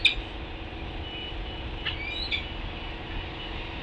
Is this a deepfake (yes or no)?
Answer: no